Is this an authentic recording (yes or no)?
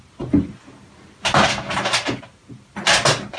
yes